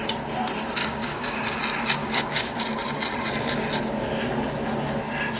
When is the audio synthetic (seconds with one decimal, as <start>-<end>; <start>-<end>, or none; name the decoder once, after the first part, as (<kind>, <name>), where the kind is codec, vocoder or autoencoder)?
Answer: 0.8-1.6 (codec, DAC); 2.0-2.6